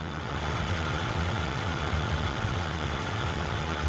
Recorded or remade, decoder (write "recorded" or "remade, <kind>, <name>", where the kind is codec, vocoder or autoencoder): remade, vocoder, WaveNeXt